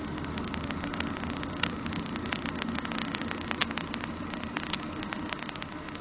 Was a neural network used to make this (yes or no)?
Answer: no